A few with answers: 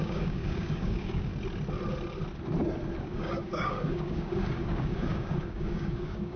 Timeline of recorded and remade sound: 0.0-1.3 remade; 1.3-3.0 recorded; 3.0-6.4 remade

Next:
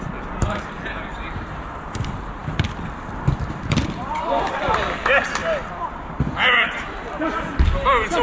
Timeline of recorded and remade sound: 0.0-2.4 recorded; 2.4-4.6 remade; 4.6-5.4 recorded; 5.4-6.6 remade; 6.6-8.2 recorded

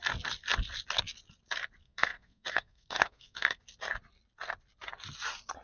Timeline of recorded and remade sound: 0.0-1.8 recorded; 1.8-3.6 remade; 3.6-5.6 recorded